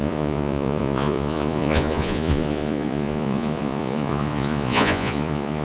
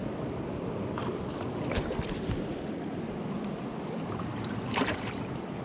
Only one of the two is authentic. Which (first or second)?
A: second